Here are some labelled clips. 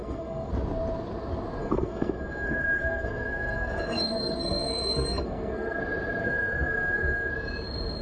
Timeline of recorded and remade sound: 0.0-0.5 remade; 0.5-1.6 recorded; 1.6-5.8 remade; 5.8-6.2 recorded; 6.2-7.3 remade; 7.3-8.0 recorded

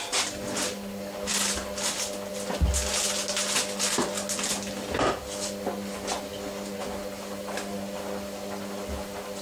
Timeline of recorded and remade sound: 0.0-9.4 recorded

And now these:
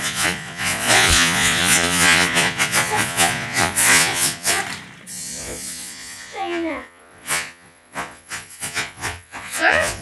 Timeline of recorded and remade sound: 0.0-4.6 remade; 4.6-5.1 recorded; 5.1-10.0 remade